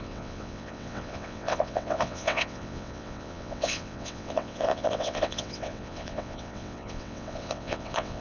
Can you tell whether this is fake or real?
fake